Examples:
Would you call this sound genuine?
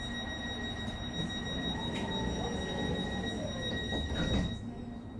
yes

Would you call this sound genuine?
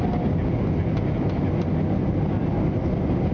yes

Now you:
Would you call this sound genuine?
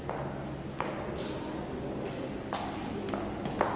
yes